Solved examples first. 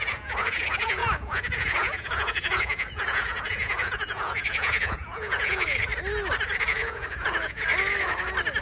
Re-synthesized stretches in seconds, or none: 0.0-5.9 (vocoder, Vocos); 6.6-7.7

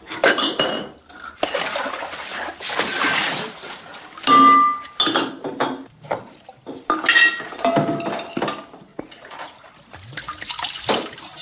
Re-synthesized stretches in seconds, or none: 8.9-9.7 (vocoder, Vocos)

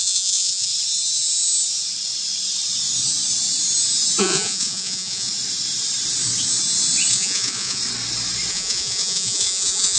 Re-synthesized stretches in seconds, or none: 0.0-0.7 (vocoder, Vocos); 4.2-5.3; 7.1-7.8; 8.5-10.0

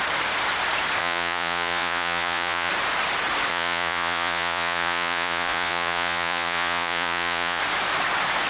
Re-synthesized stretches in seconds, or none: 1.0-2.7 (vocoder, Vocos); 3.5-7.6

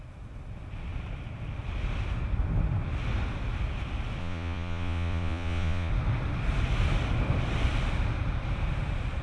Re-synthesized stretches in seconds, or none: 4.2-5.9 (vocoder, Vocos)